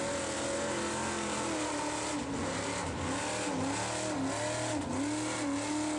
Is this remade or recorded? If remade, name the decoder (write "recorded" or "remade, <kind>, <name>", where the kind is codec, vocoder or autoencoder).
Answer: recorded